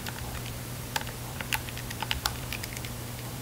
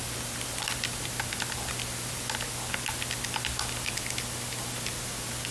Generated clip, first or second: first